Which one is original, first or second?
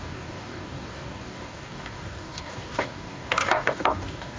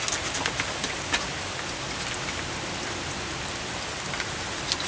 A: second